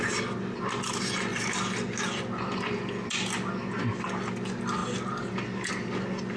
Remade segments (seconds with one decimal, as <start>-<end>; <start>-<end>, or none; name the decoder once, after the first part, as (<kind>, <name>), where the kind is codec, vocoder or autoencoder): 4.8-5.7 (vocoder, BigVGAN v2)